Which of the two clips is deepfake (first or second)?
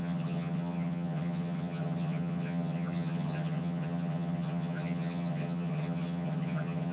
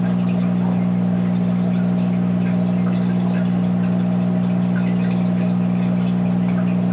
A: first